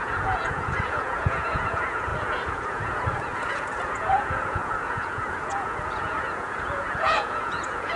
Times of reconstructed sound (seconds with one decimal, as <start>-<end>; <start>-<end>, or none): 0.0-8.0